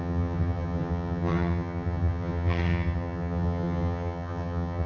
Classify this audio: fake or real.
fake